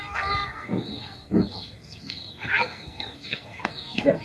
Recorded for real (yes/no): no